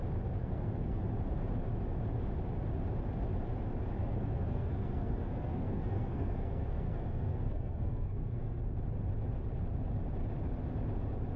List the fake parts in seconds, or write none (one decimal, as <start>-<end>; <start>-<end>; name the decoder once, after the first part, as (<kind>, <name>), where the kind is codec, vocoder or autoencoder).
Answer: 0.4-1.0 (codec, SNAC); 4.0-8.6